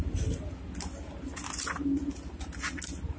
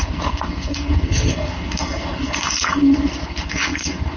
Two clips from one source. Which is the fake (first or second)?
second